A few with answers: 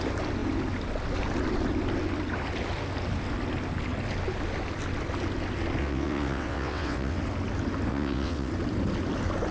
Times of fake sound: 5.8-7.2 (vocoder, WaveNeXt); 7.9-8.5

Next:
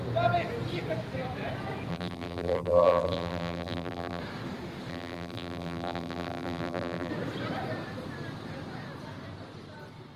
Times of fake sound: 1.9-4.2 (vocoder, BigVGAN v2); 4.9-7.1

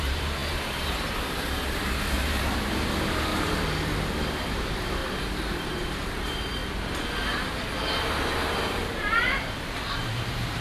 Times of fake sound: 0.0-3.3 (vocoder, BigVGAN v2); 4.3-5.0; 5.5-6.6; 9.9-10.6

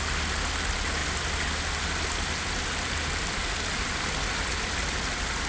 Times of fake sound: none

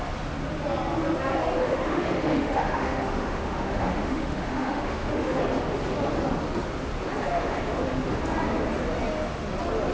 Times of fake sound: 1.6-5.4 (autoencoder, DAC-VAE); 7.3-8.2

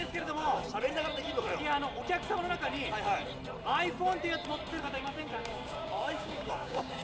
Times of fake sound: 0.0-0.6 (codec, DAC); 4.8-7.0

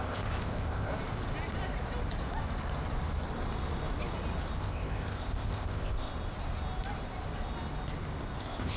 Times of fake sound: 0.0-0.9 (codec, ZipCodec); 4.6-6.1; 8.4-8.8